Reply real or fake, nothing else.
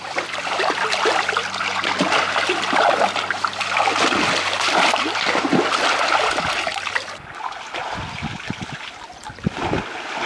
real